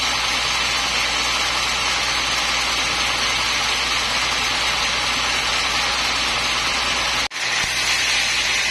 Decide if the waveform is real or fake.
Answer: real